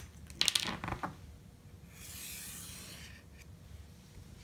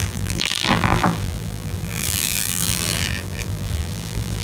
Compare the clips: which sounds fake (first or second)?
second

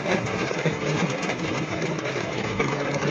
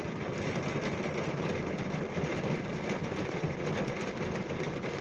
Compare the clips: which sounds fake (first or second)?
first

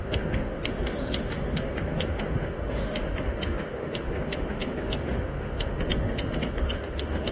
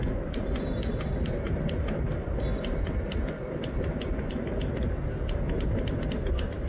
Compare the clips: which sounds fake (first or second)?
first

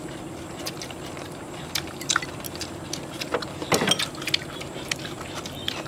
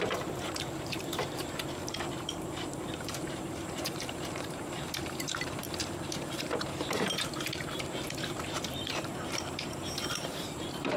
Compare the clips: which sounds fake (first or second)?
second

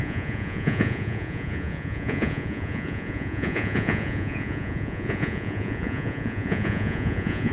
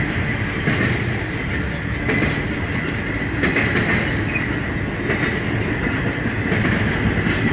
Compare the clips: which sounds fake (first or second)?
first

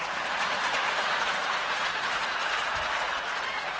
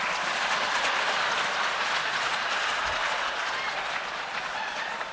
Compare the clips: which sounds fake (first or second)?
first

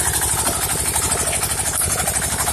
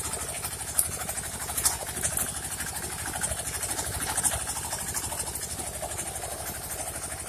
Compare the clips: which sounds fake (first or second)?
first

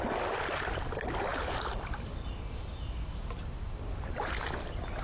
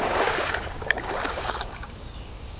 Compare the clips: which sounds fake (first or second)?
second